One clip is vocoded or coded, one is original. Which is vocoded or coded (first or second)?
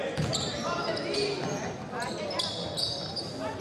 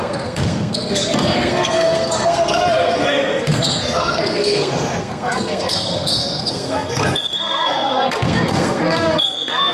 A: second